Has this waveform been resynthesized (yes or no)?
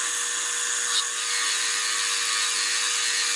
no